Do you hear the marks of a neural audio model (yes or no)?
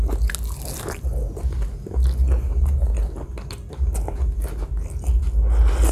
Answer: no